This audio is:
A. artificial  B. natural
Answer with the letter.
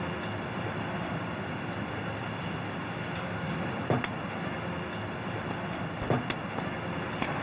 B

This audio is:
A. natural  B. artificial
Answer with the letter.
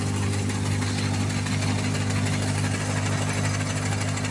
A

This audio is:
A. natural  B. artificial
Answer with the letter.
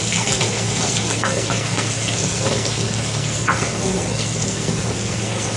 B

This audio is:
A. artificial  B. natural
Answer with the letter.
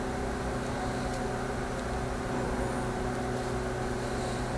B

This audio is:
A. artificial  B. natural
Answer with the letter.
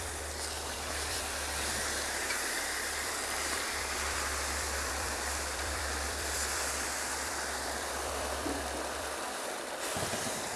A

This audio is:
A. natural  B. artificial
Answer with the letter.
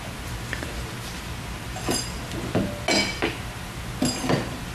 A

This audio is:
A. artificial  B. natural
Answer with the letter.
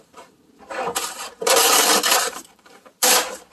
A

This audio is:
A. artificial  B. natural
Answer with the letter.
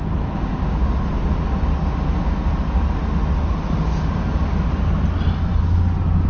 B